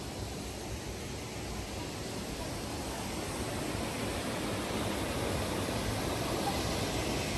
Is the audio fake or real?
real